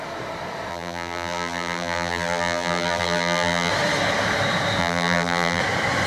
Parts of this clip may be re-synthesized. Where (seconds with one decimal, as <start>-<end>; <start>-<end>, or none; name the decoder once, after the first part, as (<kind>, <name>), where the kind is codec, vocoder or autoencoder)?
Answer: 0.7-3.7 (vocoder, BigVGAN v2); 4.8-5.6